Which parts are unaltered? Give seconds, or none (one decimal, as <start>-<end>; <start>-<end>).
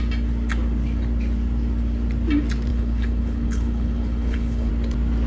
0.0-2.7; 4.7-5.3